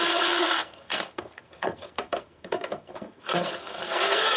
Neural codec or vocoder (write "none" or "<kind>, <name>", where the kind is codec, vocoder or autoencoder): codec, SNAC